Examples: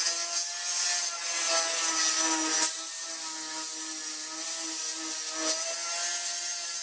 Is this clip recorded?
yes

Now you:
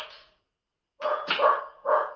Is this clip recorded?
no